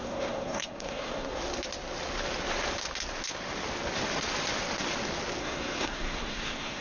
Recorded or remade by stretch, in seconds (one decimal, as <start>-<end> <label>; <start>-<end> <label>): 0.0-1.4 remade; 1.4-5.4 recorded; 5.4-6.8 remade